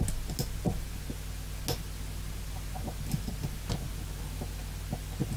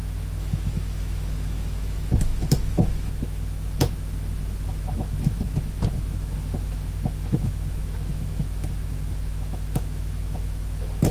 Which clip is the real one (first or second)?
first